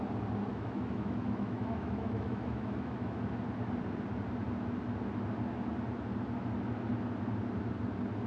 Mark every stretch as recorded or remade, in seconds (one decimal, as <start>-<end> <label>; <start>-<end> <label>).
0.0-0.5 recorded; 0.5-3.2 remade; 3.2-8.3 recorded